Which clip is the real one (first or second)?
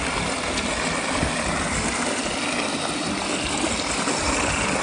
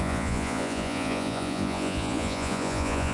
first